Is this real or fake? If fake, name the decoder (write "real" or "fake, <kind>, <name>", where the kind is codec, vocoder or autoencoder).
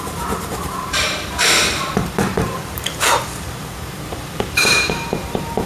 fake, vocoder, BigVGAN v2